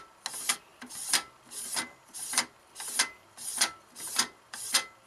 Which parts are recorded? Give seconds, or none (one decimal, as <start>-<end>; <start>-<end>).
0.0-5.1